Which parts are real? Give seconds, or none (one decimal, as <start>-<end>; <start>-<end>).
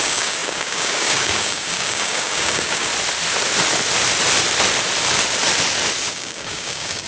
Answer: 2.9-6.1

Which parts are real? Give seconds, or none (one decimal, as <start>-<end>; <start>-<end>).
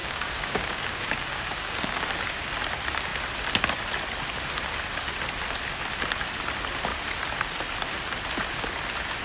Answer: 2.1-9.2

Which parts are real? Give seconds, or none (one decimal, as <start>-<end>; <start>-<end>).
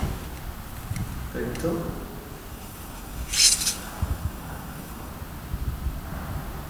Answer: 0.0-2.5; 5.1-6.7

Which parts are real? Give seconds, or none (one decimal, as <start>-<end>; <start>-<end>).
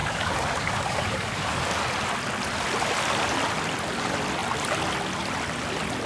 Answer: 1.8-6.1